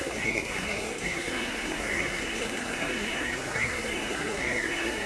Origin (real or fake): fake